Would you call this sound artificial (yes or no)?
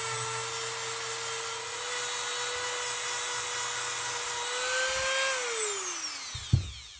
no